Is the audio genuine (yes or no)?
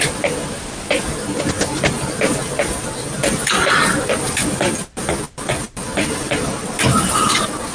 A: yes